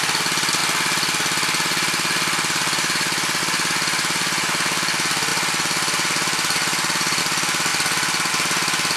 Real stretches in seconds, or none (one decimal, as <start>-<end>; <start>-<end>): 0.0-5.3; 7.2-7.7; 8.3-9.0